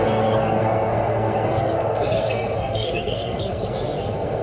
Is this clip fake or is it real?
fake